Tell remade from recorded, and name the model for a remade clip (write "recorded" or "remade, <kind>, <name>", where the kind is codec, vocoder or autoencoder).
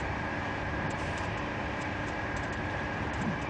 remade, vocoder, BigVGAN v2